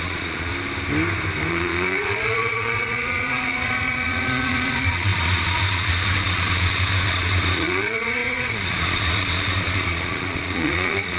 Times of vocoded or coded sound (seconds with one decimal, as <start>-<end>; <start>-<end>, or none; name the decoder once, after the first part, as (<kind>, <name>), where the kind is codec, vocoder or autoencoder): 0.0-0.5 (vocoder, Vocos); 1.5-11.2